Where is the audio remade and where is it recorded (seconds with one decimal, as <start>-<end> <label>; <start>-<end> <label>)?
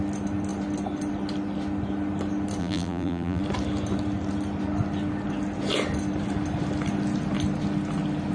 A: 0.0-2.6 recorded; 2.6-3.4 remade; 3.4-8.3 recorded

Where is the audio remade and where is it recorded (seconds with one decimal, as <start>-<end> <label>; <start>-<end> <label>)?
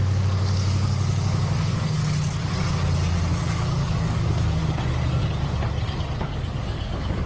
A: 0.0-2.0 remade; 2.0-3.4 recorded; 3.4-4.6 remade; 4.6-6.2 recorded; 6.2-7.3 remade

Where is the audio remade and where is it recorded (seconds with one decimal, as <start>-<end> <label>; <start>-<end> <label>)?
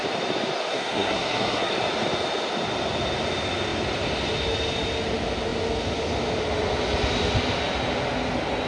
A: 0.0-0.7 recorded; 0.7-1.7 remade; 1.7-8.7 recorded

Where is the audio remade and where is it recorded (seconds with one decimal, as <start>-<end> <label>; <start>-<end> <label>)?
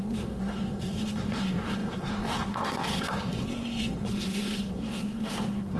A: 0.0-5.8 remade